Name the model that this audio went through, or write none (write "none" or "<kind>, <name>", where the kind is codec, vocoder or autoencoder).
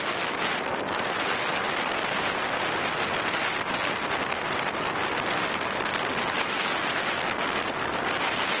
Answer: none